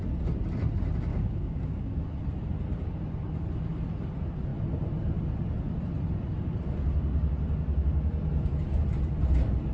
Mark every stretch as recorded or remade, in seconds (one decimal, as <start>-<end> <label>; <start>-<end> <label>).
0.0-1.1 recorded; 1.1-2.0 remade; 2.0-9.7 recorded